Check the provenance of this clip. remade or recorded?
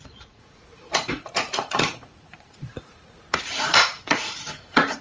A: remade